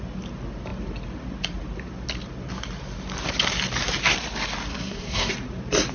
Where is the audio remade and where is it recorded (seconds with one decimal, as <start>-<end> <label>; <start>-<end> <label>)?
0.0-4.7 recorded; 4.7-5.3 remade; 5.3-5.9 recorded